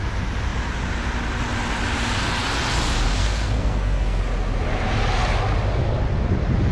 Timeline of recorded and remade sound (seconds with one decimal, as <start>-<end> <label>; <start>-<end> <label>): 0.0-3.2 recorded; 3.2-4.2 remade; 4.2-6.7 recorded